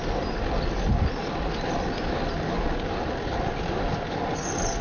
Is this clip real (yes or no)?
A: yes